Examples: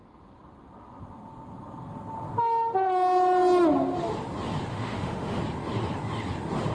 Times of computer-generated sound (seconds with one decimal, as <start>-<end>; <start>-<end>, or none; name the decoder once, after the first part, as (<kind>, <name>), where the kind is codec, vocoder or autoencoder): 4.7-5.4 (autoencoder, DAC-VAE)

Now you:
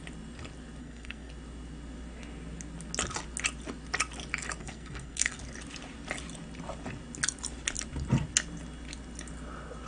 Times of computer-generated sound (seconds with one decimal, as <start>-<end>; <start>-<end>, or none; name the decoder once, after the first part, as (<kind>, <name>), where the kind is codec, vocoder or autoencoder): 0.8-1.3 (codec, SNAC); 4.6-5.4

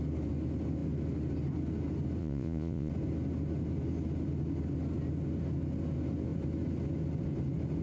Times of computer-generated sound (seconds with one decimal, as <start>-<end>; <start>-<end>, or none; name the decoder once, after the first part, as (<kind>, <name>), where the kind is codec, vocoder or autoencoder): 2.2-2.9 (vocoder, Vocos)

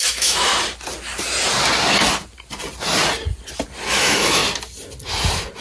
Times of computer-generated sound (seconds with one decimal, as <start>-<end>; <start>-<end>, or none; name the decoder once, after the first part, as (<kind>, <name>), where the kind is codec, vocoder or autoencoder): 0.0-0.5 (autoencoder, DAC-VAE); 3.9-4.4